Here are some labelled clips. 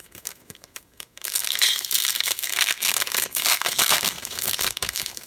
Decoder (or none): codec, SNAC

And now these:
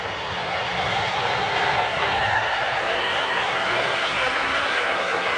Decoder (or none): codec, SNAC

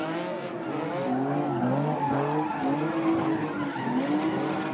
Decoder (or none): none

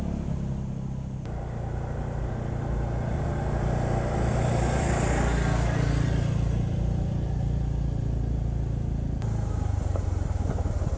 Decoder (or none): none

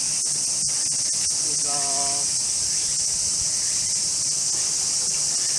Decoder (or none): none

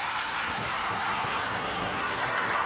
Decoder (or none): codec, SNAC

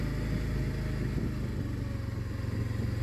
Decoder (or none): none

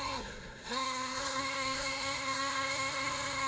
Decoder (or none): codec, SNAC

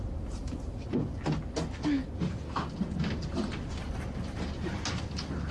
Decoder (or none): none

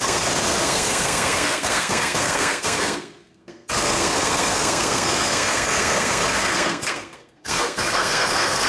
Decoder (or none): codec, SNAC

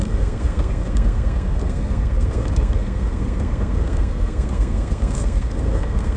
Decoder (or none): codec, SNAC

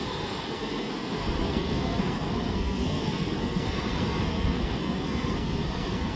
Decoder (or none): codec, SNAC